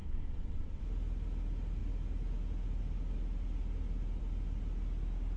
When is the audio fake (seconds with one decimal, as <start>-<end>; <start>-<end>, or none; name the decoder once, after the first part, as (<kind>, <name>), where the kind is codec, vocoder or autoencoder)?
0.0-0.8 (vocoder, WaveNeXt)